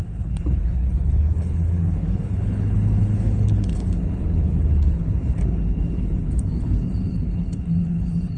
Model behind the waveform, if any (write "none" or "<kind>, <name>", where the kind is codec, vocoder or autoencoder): codec, HILCodec